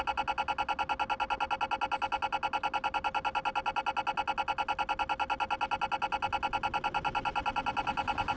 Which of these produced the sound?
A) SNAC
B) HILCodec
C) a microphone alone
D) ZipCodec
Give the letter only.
C